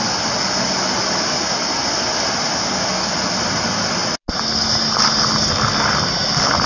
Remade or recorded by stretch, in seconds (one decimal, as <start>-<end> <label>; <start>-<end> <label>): 0.0-6.7 recorded